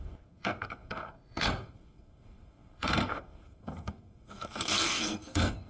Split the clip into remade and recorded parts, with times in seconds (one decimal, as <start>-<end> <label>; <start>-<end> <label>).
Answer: 0.0-5.7 remade